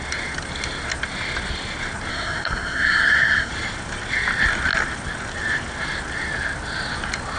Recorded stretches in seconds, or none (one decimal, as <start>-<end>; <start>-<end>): 0.0-2.1; 3.5-7.4